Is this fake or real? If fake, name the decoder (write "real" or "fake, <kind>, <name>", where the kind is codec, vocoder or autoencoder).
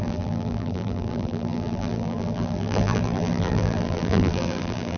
fake, vocoder, BigVGAN v2